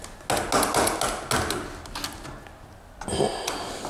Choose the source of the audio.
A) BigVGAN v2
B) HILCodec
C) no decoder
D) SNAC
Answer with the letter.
C